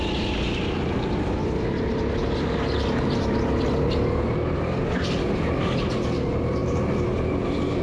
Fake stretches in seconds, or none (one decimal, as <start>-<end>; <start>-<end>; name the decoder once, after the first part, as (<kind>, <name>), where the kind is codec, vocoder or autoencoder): none